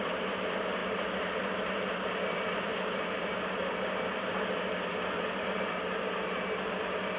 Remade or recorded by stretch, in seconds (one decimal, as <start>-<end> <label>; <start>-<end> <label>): 0.0-0.8 remade; 0.8-2.2 recorded; 2.2-7.2 remade